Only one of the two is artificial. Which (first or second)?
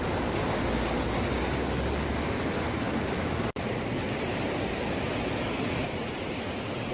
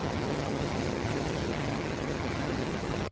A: second